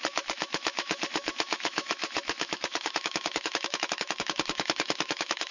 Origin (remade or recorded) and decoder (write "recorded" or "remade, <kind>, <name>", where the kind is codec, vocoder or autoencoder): remade, autoencoder, DAC-VAE